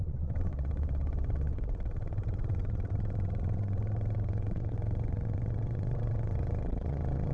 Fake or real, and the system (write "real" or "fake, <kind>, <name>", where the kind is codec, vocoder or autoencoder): fake, vocoder, WaveNeXt